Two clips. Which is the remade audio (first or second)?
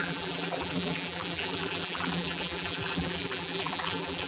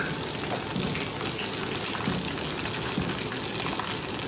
first